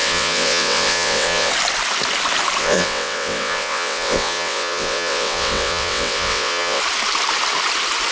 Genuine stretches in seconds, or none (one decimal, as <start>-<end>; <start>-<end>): 1.5-2.6; 6.8-8.1